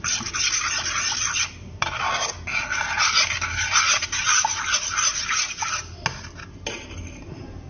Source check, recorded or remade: recorded